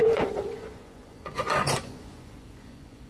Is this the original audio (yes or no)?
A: no